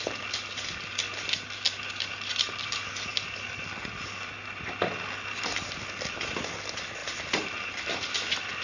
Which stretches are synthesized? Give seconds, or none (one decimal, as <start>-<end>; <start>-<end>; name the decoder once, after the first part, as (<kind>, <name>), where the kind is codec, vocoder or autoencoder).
none